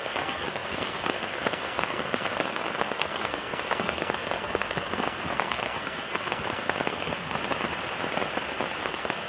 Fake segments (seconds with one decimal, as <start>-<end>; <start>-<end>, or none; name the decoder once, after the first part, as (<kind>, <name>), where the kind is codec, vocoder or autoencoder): 0.0-7.4 (codec, SNAC); 8.8-9.3

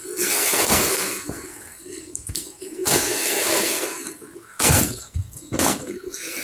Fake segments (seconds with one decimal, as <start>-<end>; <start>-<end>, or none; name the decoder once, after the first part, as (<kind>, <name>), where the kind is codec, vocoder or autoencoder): 0.0-6.4 (codec, SNAC)

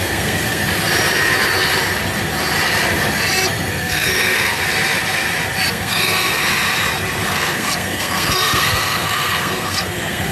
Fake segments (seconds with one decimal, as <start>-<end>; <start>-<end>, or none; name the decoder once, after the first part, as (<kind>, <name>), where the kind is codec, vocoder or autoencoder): 0.0-0.6 (codec, SNAC); 3.7-4.6; 5.7-6.4; 7.3-10.3

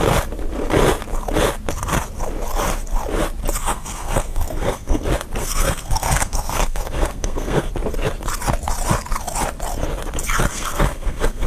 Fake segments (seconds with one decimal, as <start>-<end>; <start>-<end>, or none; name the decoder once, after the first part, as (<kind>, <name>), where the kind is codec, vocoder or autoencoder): 3.6-5.0 (codec, SNAC); 5.4-7.7; 10.5-11.5

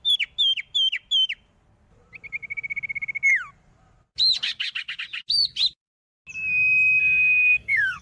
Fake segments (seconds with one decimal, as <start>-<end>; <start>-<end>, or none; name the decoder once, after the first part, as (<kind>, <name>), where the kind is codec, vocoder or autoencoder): 7.0-8.0 (codec, SNAC)

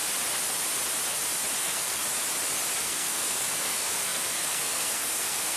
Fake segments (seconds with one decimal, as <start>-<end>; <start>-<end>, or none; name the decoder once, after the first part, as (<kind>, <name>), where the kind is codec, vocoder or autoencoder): 1.6-2.0 (codec, SNAC); 2.8-5.6

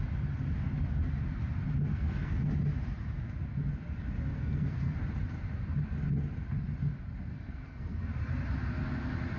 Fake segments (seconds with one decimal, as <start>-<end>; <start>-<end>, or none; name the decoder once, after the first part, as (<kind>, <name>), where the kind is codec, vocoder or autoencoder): 1.9-2.5 (codec, SNAC); 4.3-5.0; 7.3-8.1

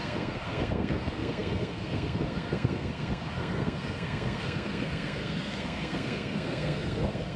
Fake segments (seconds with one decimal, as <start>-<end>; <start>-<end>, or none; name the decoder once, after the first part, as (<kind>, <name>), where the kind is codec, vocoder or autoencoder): 0.0-7.4 (codec, SNAC)